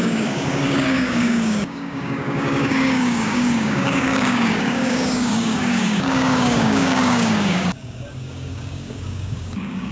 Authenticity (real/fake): fake